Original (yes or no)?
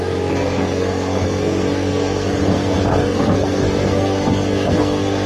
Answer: no